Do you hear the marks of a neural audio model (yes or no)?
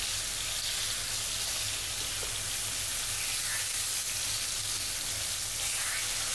no